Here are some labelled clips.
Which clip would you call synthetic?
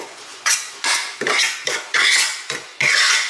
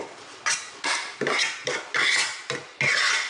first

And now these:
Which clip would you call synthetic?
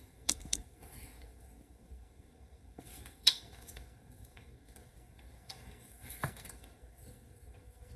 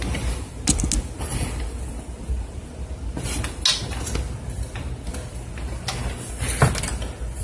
first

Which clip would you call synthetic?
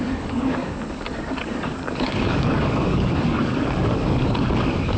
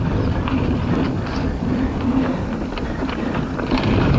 first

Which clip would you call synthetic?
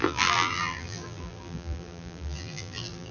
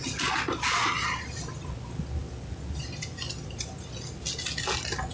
first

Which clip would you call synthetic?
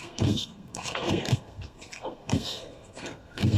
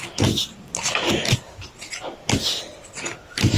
first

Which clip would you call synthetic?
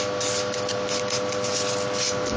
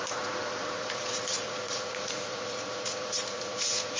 second